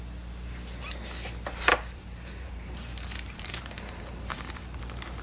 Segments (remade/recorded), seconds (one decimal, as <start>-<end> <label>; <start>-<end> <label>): 0.0-1.7 recorded; 1.7-4.8 remade; 4.8-5.2 recorded